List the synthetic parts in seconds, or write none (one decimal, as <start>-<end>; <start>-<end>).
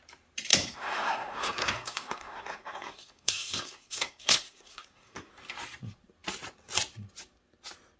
0.5-5.3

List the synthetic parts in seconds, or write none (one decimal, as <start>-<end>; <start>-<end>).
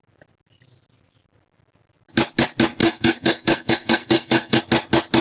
2.8-4.6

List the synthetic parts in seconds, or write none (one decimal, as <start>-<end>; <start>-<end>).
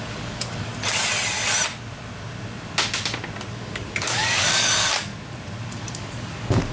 0.0-0.7; 3.5-5.1; 5.7-6.7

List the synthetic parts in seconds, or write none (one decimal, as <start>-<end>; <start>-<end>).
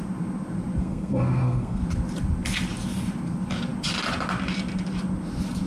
0.8-1.8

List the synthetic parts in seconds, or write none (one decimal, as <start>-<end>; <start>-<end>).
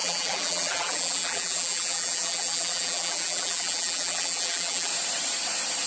0.0-4.9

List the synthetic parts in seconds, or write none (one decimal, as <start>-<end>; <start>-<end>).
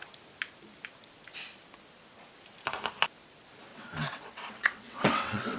3.7-5.6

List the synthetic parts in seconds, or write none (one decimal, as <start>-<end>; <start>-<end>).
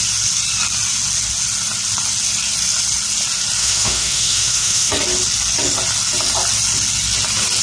3.6-4.9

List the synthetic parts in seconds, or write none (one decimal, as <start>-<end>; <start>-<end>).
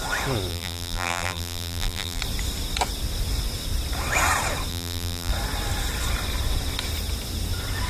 0.5-2.2; 4.7-5.3